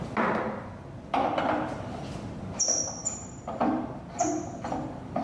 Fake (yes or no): yes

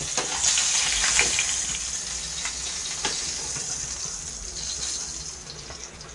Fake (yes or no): no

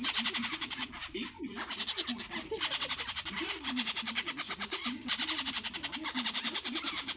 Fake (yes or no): yes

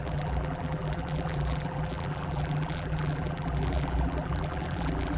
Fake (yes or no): yes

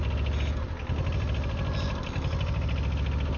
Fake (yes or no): no